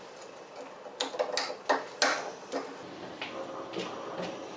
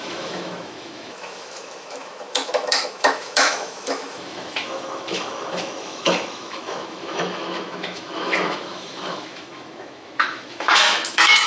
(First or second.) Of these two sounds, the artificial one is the second